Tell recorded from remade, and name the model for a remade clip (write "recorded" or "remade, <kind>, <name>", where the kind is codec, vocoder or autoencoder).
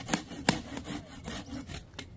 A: recorded